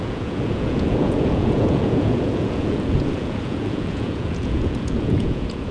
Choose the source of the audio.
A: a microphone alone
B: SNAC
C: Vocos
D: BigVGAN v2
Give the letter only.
C